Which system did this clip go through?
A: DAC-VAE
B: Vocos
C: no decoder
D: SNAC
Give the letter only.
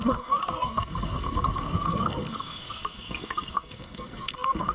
D